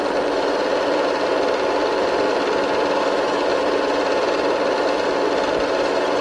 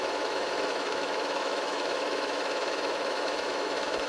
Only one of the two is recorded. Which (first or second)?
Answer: first